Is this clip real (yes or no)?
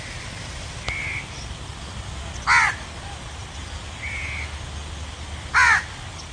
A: yes